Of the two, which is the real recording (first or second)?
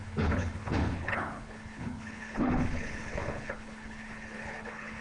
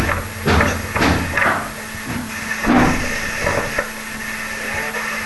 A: second